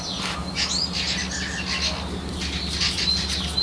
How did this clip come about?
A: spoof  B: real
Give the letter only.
B